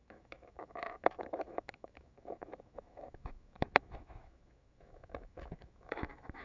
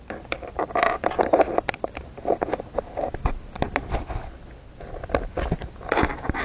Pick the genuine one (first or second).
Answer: second